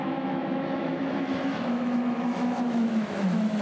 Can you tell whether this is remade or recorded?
remade